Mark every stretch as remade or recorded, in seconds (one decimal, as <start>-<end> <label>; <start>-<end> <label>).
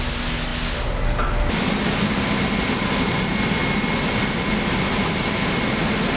0.0-6.2 recorded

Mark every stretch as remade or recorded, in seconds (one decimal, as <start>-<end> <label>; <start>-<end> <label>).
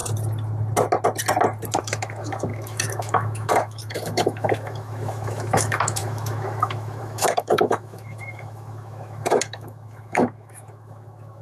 0.0-1.8 recorded; 1.8-11.4 remade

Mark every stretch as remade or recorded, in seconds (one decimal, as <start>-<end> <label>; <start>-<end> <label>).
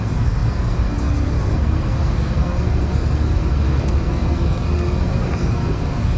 0.0-6.2 remade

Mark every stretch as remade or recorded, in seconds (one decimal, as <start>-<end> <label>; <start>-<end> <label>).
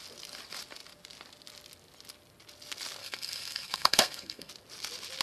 0.0-3.0 recorded; 3.0-4.5 remade; 4.5-5.2 recorded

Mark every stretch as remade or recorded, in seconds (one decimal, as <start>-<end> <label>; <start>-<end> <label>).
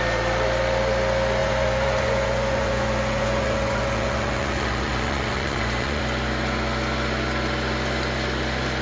0.0-1.4 recorded; 1.4-6.0 remade; 6.0-8.8 recorded